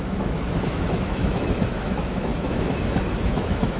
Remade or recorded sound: remade